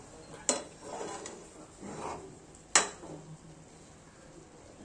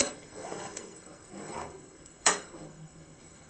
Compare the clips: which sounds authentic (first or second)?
first